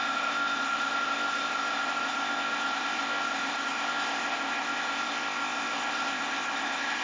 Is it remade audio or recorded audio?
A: remade